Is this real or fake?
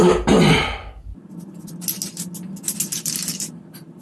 real